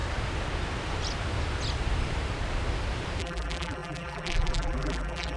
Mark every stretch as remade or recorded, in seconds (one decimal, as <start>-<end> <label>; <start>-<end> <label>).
0.0-3.2 recorded; 3.2-5.4 remade